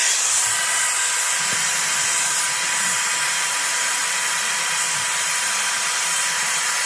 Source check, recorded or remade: recorded